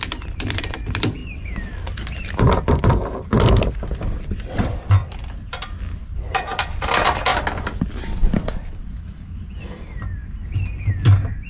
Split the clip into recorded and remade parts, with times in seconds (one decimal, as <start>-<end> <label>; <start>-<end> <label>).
0.0-7.3 remade; 7.3-9.5 recorded; 9.5-10.2 remade; 10.2-10.9 recorded; 10.9-11.5 remade